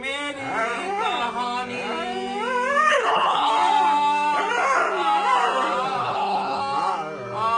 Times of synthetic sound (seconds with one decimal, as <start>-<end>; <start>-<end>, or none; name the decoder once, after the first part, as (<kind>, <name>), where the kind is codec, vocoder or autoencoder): 2.9-3.5 (codec, HILCodec); 6.0-6.6